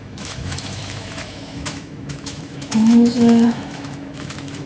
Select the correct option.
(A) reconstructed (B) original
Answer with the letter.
A